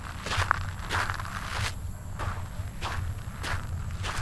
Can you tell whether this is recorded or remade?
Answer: recorded